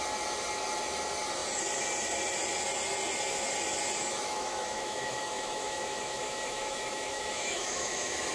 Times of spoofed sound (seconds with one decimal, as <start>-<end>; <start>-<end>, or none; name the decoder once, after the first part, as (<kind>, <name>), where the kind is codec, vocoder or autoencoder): 4.1-8.3 (autoencoder, DAC-VAE)

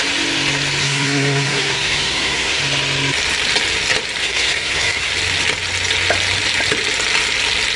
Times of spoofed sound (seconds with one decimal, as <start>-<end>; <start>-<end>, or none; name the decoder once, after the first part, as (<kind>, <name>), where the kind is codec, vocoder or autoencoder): 0.8-2.6 (codec, SNAC); 4.2-5.1